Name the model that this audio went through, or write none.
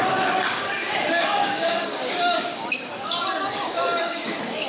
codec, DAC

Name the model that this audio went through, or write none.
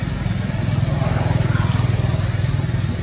none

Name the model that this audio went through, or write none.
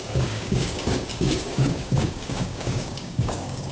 codec, DAC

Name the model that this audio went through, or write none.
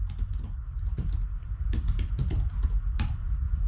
none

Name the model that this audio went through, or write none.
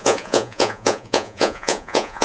vocoder, Vocos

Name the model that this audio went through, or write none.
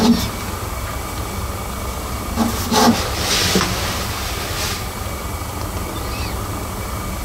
none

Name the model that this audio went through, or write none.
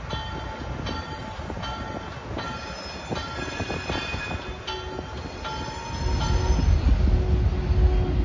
none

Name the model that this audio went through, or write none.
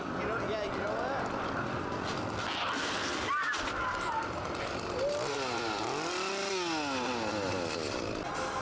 none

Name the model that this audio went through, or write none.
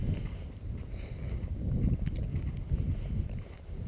none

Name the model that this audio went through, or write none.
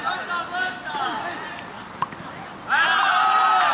none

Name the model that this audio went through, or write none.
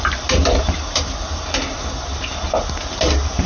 none